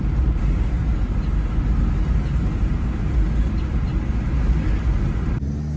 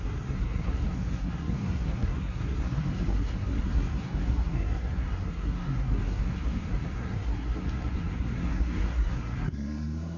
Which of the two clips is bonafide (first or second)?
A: first